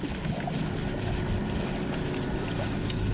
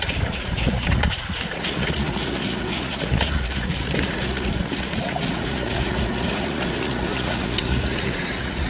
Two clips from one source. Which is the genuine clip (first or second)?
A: first